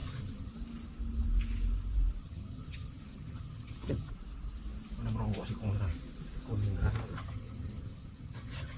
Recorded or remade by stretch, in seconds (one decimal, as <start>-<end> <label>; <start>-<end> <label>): 0.0-0.5 remade; 0.5-2.2 recorded; 2.2-4.1 remade; 4.1-7.1 recorded; 7.1-8.8 remade